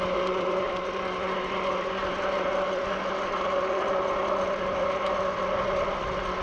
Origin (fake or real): real